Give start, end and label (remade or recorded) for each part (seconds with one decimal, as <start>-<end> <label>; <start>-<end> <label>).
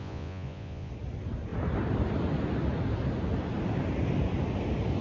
0.0-0.9 remade; 0.9-5.0 recorded